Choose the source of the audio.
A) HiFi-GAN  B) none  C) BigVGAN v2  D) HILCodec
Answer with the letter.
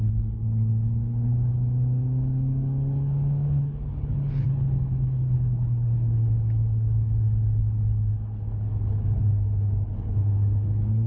D